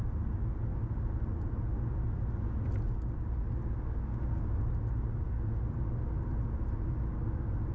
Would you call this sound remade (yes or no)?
no